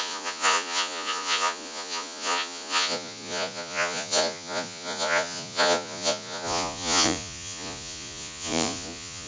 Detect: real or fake fake